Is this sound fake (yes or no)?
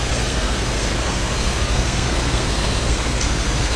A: yes